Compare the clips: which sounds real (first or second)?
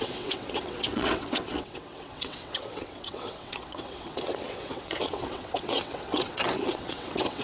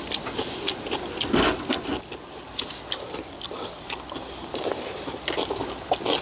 second